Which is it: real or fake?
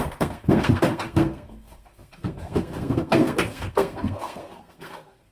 fake